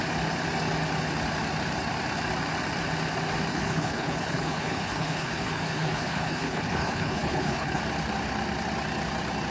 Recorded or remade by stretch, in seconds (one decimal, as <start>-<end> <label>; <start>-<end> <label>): 0.0-3.5 recorded; 3.5-7.8 remade; 7.8-9.5 recorded